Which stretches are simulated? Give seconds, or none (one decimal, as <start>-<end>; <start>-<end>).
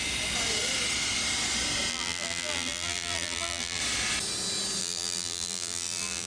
1.9-3.8; 4.8-6.3